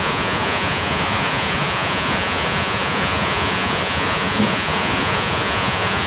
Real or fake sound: fake